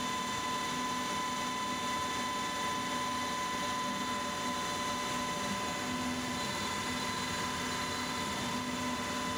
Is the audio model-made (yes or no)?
no